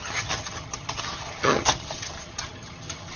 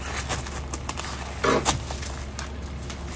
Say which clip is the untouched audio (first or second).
second